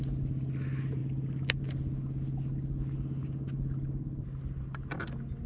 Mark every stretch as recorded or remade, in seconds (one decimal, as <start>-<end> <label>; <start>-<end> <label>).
0.0-5.5 recorded